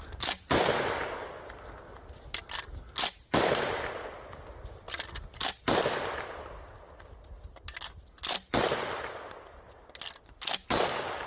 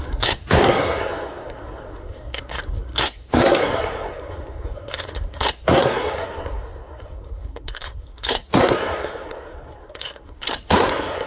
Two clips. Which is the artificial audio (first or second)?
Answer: second